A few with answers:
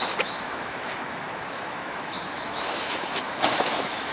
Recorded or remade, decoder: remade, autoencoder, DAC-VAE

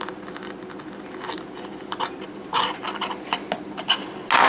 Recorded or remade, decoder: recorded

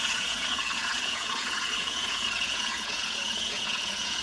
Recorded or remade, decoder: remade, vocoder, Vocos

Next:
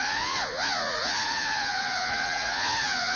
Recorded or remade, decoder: remade, vocoder, Vocos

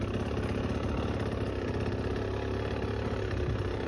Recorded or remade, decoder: recorded